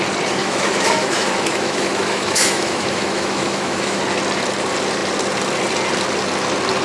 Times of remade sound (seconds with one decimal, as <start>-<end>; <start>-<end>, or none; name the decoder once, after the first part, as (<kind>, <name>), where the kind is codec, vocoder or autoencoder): 0.4-4.0 (autoencoder, DAC-VAE)